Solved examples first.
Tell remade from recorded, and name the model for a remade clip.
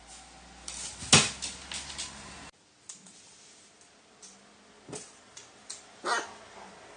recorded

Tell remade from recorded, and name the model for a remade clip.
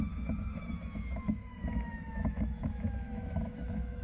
remade, autoencoder, DAC-VAE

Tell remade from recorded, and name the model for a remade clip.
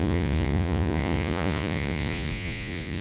remade, vocoder, Vocos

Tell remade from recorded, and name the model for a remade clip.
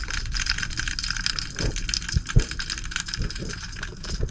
recorded